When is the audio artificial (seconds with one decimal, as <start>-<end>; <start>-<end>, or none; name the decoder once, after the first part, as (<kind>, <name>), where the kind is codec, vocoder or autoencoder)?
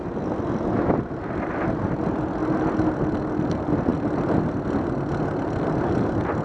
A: 3.9-4.4 (vocoder, BigVGAN v2)